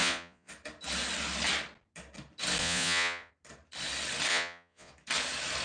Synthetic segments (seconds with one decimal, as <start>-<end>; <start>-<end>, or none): 0.0-0.5; 2.6-3.3; 4.3-4.9